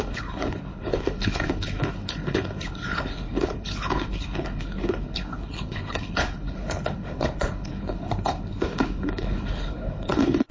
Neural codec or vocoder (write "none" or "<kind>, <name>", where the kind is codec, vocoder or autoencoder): codec, HILCodec